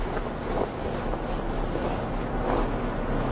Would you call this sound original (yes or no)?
yes